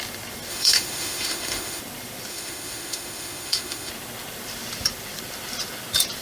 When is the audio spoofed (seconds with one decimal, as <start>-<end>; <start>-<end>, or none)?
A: 0.5-1.8; 2.3-3.9